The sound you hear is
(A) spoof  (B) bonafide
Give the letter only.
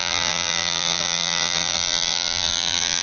A